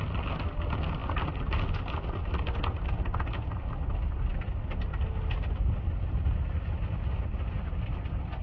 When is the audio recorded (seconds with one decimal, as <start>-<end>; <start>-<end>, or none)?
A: 0.0-8.4